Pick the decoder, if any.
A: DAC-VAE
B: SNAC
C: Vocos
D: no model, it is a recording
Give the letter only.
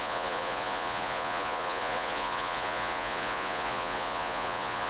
C